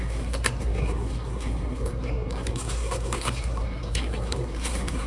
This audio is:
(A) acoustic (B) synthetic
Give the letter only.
B